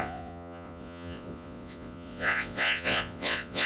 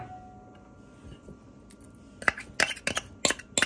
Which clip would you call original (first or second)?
second